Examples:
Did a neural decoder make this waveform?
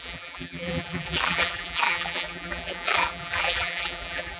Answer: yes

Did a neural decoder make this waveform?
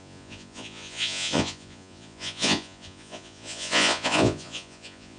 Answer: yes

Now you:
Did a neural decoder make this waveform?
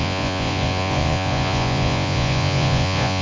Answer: yes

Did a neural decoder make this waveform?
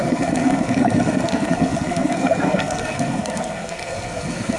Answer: yes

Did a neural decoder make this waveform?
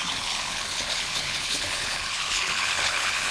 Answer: yes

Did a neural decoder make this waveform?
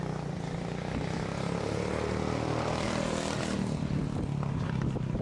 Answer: no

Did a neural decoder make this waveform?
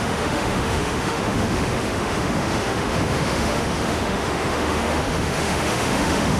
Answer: yes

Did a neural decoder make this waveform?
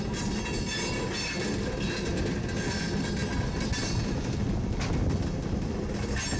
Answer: no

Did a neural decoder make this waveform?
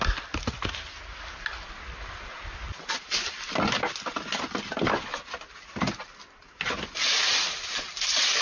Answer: no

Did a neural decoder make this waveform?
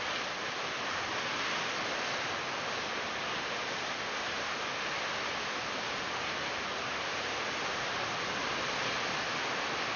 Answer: no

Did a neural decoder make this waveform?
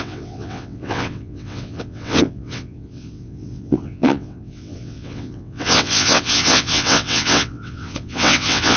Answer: yes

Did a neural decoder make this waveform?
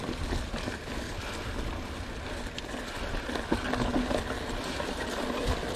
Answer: no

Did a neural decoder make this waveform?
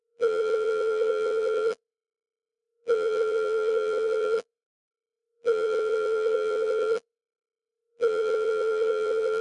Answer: yes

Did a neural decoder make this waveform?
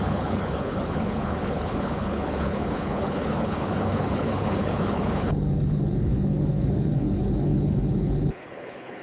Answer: yes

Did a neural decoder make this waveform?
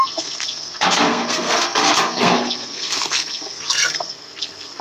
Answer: yes